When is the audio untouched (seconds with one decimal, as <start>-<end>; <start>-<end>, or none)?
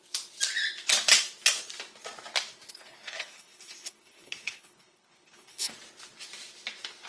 0.0-2.7; 5.7-7.1